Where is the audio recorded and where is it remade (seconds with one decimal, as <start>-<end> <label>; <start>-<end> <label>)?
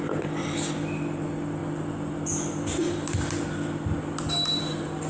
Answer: 0.0-5.1 recorded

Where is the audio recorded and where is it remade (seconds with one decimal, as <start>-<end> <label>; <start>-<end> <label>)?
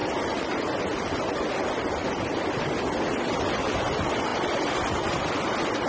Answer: 0.0-2.0 remade; 2.0-3.2 recorded; 3.2-5.9 remade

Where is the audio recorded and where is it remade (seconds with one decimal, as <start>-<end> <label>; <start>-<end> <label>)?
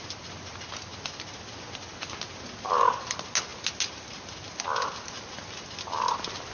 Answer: 0.0-6.5 recorded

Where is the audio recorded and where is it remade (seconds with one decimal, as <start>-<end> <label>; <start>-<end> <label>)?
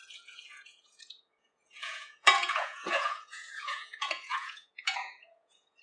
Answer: 0.0-5.8 remade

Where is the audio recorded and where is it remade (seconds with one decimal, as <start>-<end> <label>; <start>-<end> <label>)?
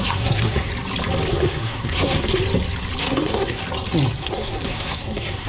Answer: 0.0-0.7 remade; 0.7-1.3 recorded; 1.3-2.4 remade; 2.4-3.0 recorded; 3.0-3.6 remade; 3.6-4.2 recorded; 4.2-5.5 remade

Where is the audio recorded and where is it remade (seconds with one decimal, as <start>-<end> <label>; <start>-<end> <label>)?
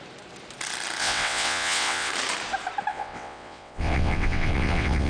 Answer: 0.0-1.0 recorded; 1.0-2.1 remade; 2.1-2.9 recorded; 2.9-5.1 remade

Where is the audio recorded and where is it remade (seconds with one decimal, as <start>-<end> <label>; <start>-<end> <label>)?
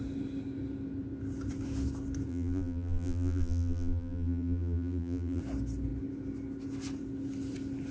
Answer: 0.0-2.3 recorded; 2.3-5.4 remade; 5.4-7.9 recorded